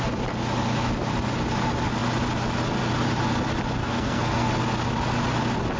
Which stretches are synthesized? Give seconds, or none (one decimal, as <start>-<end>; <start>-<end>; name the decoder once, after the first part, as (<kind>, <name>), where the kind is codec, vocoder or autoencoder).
3.8-4.5 (codec, SNAC)